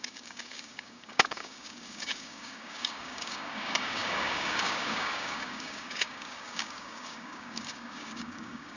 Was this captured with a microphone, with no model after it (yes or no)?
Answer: no